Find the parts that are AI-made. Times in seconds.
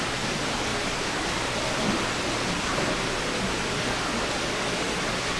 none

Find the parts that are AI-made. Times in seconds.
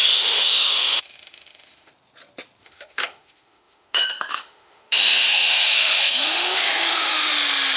0.0-1.9 (autoencoder, DAC-VAE); 2.6-7.3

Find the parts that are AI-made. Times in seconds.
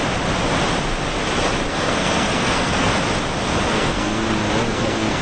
1.7-2.9 (codec, SNAC); 3.7-4.2; 4.7-5.2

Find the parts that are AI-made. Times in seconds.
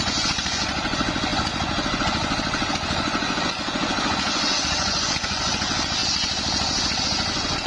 0.0-6.0 (vocoder, Vocos); 7.0-7.7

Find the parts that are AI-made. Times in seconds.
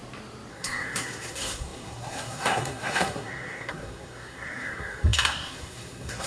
0.5-6.3 (codec, SNAC)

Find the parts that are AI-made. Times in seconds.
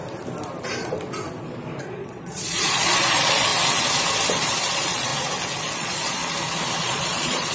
1.8-3.5 (vocoder, Vocos); 4.3-5.1; 5.6-6.2; 6.8-7.5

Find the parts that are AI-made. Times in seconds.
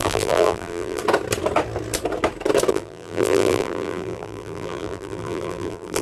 0.0-1.0 (vocoder, BigVGAN v2); 2.7-6.0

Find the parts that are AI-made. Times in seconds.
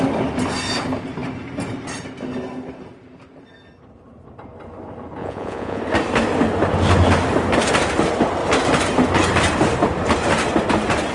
5.2-5.8 (vocoder, Vocos)